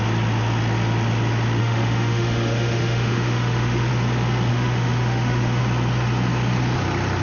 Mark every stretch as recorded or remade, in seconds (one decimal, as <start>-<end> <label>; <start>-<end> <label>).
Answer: 0.0-1.6 recorded; 1.6-3.9 remade; 3.9-4.5 recorded; 4.5-5.6 remade; 5.6-7.2 recorded